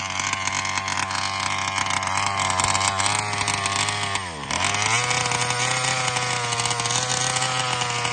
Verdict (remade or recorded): recorded